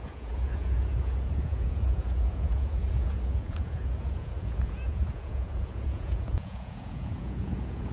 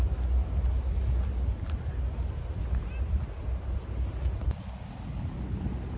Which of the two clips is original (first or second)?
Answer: second